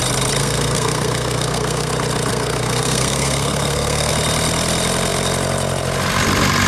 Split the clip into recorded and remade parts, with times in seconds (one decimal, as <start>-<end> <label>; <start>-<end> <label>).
0.0-0.4 recorded; 0.4-1.9 remade; 1.9-2.3 recorded; 2.3-4.1 remade; 4.1-6.7 recorded